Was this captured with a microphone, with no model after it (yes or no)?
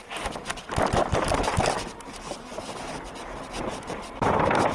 yes